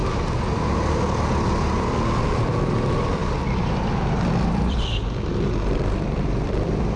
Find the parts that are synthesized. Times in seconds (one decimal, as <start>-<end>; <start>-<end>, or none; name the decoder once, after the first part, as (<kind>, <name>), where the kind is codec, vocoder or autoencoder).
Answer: 2.2-3.2 (vocoder, BigVGAN v2); 4.2-7.0